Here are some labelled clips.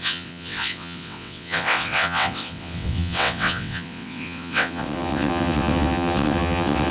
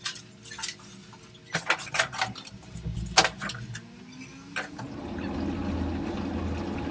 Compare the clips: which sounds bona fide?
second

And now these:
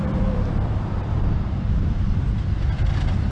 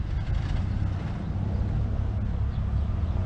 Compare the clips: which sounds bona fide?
second